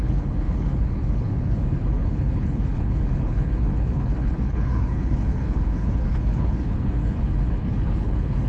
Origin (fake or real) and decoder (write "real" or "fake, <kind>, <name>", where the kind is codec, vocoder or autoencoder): fake, codec, HILCodec